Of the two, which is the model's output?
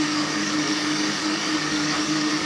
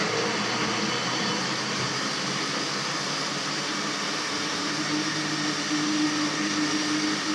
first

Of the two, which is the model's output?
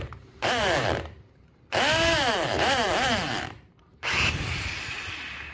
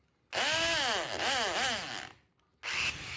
first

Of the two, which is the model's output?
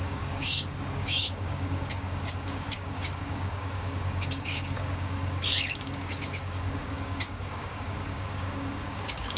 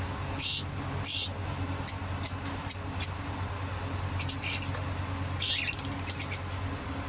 first